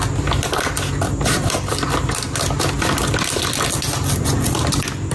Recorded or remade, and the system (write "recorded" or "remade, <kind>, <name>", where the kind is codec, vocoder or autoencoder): recorded